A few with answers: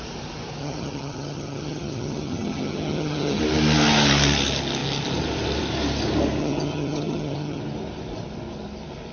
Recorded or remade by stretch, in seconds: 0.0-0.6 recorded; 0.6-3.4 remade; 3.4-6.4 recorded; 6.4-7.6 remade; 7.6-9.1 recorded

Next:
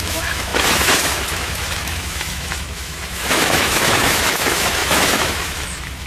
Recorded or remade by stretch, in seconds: 0.0-6.1 remade

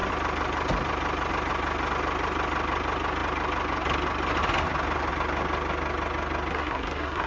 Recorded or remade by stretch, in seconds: 0.0-6.5 recorded; 6.5-7.3 remade

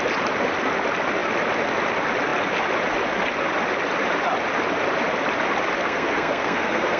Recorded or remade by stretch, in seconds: 0.0-5.8 recorded; 5.8-7.0 remade

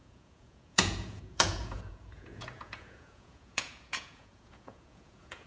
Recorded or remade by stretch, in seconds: 0.0-5.5 remade